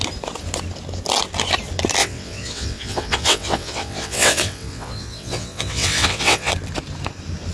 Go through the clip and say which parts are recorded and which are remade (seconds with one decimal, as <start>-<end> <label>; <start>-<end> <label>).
0.0-2.0 recorded; 2.0-6.5 remade; 6.5-7.5 recorded